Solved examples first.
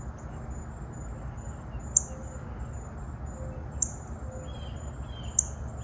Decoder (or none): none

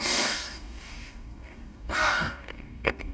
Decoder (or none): codec, DAC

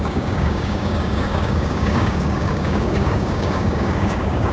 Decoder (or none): codec, DAC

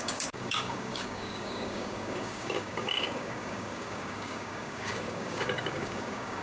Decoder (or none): codec, DAC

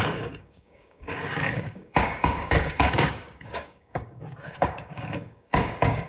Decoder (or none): codec, DAC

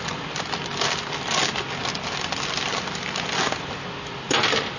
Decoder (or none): none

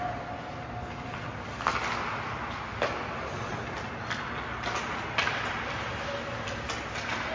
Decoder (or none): none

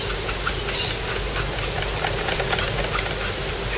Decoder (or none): none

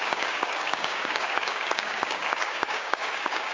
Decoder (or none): codec, DAC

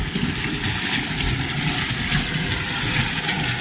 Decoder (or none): none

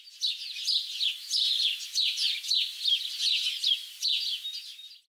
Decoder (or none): none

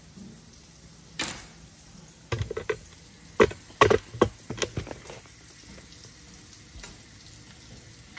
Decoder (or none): none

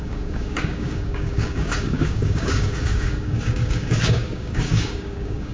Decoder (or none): codec, DAC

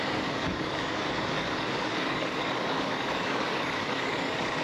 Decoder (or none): codec, DAC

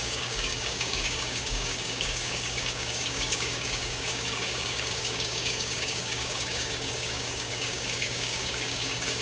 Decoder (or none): codec, DAC